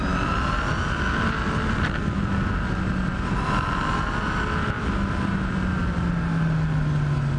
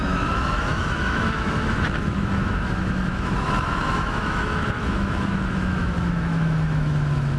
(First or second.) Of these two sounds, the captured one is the first